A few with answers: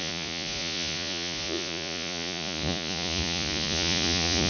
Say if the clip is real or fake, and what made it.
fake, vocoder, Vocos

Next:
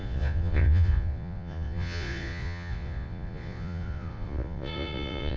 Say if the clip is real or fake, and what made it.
fake, vocoder, Vocos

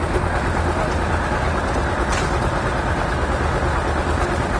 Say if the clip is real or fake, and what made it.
real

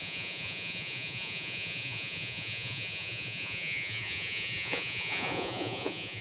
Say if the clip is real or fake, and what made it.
fake, vocoder, Vocos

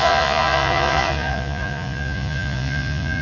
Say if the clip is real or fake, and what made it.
fake, vocoder, Vocos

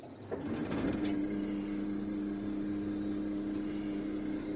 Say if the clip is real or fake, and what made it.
real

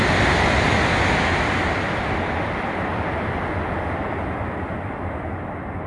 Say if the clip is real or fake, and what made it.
real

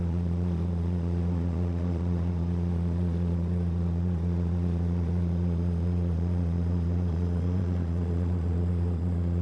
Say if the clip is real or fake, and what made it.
fake, vocoder, Vocos